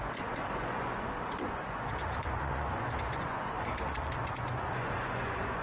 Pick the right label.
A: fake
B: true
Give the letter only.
A